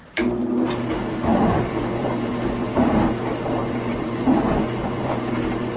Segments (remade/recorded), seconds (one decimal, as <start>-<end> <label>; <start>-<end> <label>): 0.0-1.3 recorded; 1.3-2.9 remade; 2.9-3.6 recorded; 3.6-5.3 remade; 5.3-5.8 recorded